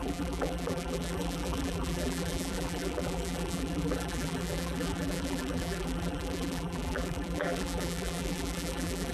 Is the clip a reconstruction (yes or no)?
yes